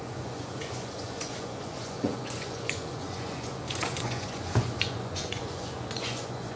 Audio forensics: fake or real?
fake